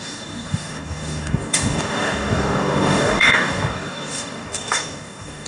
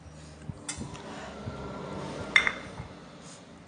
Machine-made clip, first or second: first